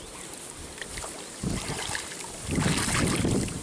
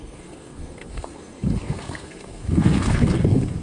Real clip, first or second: first